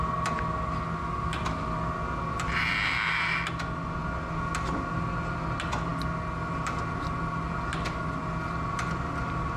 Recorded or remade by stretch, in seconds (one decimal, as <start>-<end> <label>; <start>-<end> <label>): 0.0-9.6 recorded